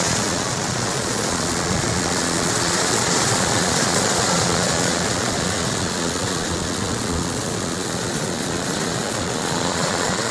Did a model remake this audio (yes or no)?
yes